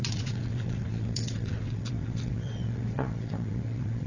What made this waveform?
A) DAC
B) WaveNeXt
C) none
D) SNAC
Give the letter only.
B